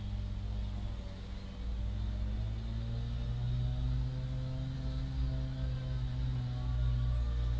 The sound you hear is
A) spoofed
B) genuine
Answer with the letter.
B